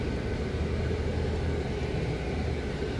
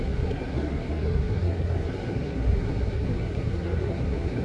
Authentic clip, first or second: first